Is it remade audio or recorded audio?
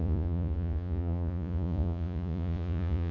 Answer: remade